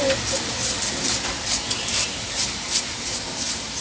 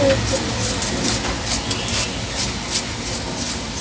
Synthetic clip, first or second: first